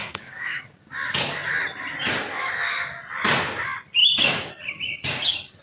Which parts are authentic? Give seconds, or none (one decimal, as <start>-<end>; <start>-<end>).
0.6-4.0; 4.5-5.6